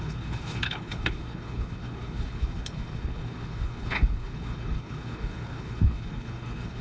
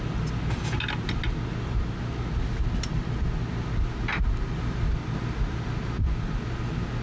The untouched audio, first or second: second